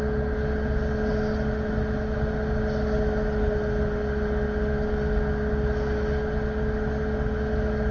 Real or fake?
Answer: real